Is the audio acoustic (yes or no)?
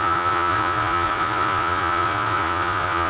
no